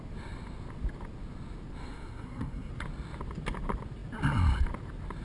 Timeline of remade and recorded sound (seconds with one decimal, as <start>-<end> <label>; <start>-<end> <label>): 0.0-1.8 recorded; 1.8-2.7 remade; 2.7-5.2 recorded